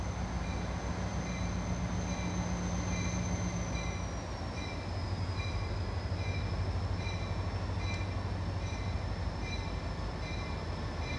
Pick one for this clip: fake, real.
real